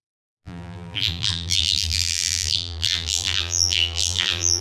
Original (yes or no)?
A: no